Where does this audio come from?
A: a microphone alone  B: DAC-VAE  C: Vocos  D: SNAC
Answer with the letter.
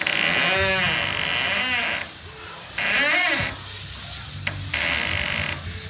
A